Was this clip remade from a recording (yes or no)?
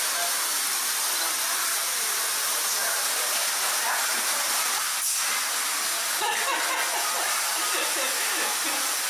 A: no